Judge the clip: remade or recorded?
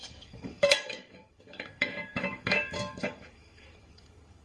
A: remade